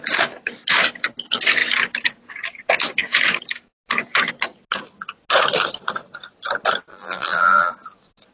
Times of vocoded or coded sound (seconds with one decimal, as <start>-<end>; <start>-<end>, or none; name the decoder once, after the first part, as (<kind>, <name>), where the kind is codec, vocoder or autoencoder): 6.9-7.7 (vocoder, BigVGAN v2)